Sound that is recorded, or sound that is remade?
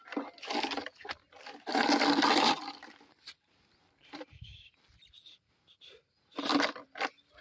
recorded